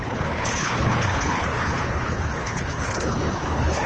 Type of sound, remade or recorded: remade